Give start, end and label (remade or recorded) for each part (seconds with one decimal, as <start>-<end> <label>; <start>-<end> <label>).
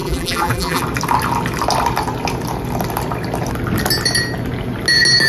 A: 0.0-0.8 remade; 0.8-5.3 recorded